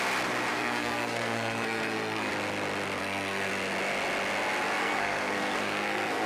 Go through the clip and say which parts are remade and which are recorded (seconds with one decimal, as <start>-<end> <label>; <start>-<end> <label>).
0.0-0.5 recorded; 0.5-2.3 remade; 2.3-3.0 recorded; 3.0-3.5 remade; 3.5-4.8 recorded; 4.8-6.3 remade